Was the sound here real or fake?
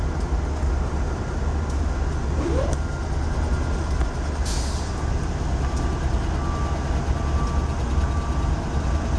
real